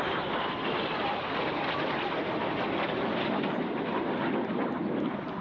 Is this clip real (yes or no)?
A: yes